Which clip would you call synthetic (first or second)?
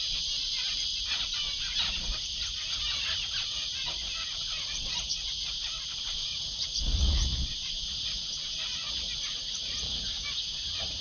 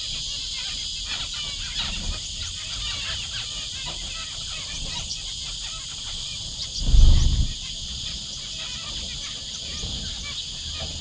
first